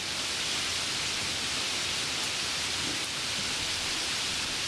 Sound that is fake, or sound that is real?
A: real